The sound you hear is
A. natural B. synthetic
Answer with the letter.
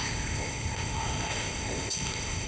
B